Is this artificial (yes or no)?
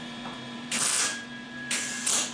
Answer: yes